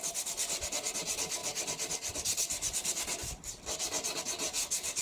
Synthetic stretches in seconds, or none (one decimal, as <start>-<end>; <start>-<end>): none